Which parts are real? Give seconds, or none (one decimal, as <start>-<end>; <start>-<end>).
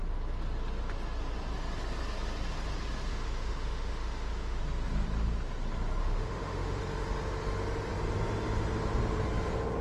0.0-3.1; 4.6-6.0; 6.8-9.8